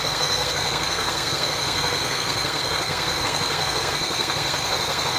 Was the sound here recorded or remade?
remade